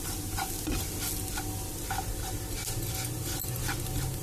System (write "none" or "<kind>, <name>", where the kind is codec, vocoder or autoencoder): none